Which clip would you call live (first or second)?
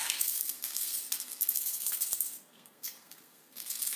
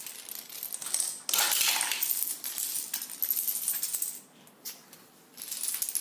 second